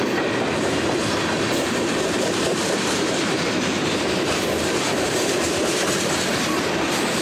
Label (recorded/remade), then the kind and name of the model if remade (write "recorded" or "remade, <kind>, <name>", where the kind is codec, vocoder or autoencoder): remade, vocoder, BigVGAN v2